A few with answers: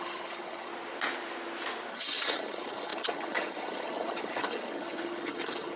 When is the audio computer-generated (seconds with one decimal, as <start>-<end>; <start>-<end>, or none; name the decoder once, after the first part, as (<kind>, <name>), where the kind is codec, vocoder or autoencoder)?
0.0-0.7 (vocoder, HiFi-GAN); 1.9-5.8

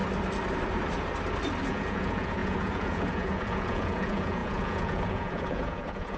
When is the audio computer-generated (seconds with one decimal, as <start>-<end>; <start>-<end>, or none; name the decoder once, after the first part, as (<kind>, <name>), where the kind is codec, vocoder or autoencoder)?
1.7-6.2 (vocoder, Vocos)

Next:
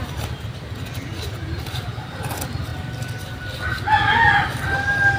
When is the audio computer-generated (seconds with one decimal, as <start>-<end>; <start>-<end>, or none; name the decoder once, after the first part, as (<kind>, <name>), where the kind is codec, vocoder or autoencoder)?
none